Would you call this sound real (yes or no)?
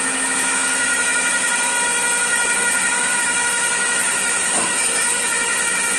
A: no